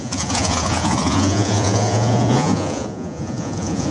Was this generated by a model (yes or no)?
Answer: yes